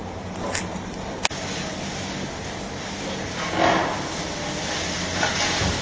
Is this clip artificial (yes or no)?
no